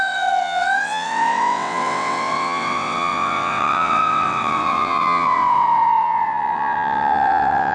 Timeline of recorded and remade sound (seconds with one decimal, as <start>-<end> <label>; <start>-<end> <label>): 0.0-7.7 remade